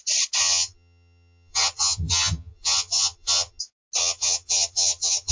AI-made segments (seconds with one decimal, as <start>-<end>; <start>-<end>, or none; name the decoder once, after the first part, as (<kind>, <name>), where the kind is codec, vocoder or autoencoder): 0.4-3.6 (vocoder, HiFi-GAN); 4.0-5.3